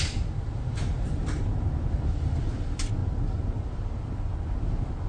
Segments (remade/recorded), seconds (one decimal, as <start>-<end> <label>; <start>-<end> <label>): 0.0-5.1 recorded